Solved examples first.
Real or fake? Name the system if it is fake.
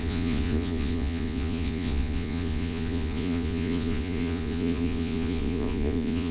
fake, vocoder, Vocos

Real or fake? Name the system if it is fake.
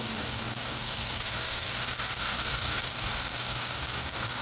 fake, codec, DAC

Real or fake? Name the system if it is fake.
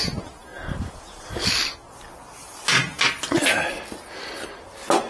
real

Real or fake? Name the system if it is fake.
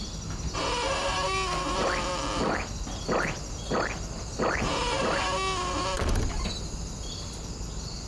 real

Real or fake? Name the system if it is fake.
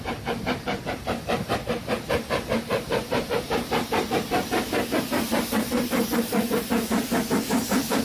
fake, vocoder, BigVGAN v2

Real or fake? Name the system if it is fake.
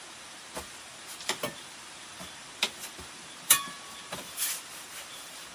fake, vocoder, BigVGAN v2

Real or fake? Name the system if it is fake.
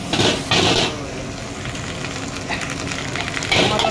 real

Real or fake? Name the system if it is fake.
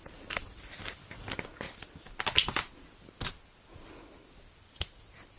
real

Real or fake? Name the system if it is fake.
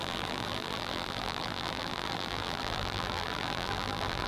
fake, vocoder, BigVGAN v2